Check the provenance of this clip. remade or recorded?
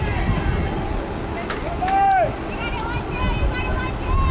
recorded